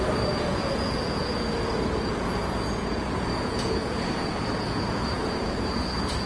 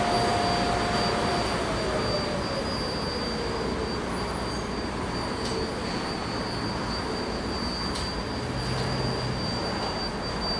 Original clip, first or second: second